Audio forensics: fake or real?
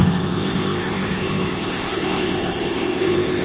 fake